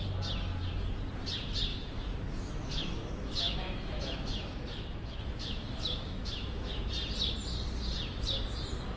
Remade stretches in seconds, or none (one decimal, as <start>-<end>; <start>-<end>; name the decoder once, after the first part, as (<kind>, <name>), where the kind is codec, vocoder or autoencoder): 1.7-6.9 (autoencoder, DAC-VAE)